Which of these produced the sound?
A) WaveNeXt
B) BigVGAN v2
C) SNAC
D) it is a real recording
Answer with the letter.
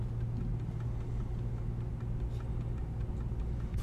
D